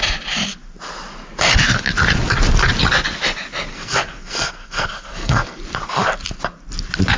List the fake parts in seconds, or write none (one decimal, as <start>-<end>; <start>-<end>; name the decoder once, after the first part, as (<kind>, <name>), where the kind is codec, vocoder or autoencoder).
3.7-5.6 (codec, SNAC)